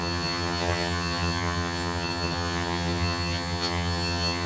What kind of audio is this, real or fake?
fake